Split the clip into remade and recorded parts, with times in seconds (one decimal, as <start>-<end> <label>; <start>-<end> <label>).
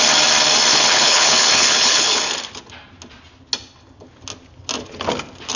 0.0-0.7 recorded; 0.7-2.2 remade; 2.2-5.6 recorded